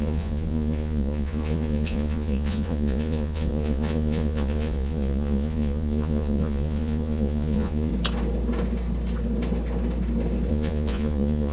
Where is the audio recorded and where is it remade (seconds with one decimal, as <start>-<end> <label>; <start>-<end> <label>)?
0.0-7.9 remade; 7.9-10.5 recorded; 10.5-11.5 remade